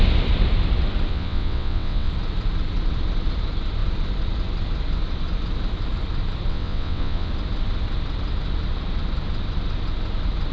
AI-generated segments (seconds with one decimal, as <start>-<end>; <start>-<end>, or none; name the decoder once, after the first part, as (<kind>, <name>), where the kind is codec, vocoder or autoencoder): 1.1-2.1 (vocoder, WaveNeXt); 6.5-7.3